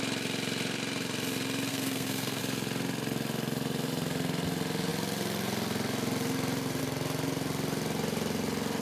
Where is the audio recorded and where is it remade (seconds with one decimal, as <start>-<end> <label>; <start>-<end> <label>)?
0.0-1.7 recorded; 1.7-2.4 remade; 2.4-8.8 recorded